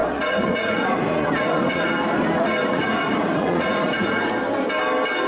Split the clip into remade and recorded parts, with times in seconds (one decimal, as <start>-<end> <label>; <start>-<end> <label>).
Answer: 0.0-1.9 remade; 1.9-2.6 recorded; 2.6-4.3 remade; 4.3-5.3 recorded

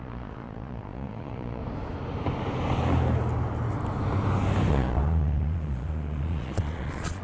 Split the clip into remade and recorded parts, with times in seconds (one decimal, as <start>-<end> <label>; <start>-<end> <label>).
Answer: 0.0-1.6 remade; 1.6-4.7 recorded; 4.7-7.2 remade

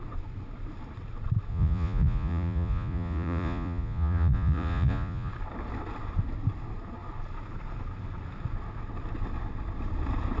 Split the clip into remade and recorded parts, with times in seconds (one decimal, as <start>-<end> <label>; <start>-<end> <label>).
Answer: 0.0-1.5 recorded; 1.5-5.3 remade; 5.3-10.4 recorded

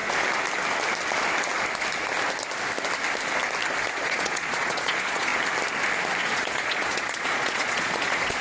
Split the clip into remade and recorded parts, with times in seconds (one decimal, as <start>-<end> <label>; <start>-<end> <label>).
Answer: 0.0-3.9 recorded; 3.9-5.3 remade; 5.3-6.2 recorded; 6.2-8.4 remade

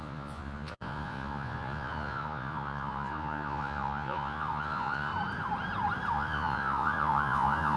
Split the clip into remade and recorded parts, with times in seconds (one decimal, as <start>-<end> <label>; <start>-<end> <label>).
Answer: 0.0-5.1 remade; 5.1-6.1 recorded; 6.1-7.8 remade